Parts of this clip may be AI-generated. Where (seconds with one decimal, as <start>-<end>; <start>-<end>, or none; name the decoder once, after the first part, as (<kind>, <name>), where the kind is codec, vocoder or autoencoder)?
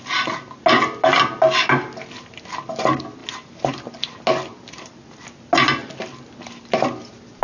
none